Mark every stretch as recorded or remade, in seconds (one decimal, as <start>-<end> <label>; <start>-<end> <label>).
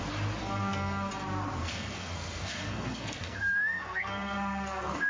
0.0-0.4 recorded; 0.4-1.1 remade; 1.1-1.6 recorded; 1.6-5.1 remade